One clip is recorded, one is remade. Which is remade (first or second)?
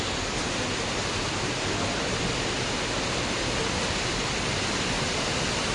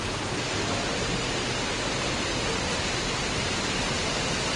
first